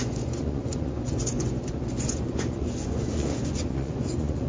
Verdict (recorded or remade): remade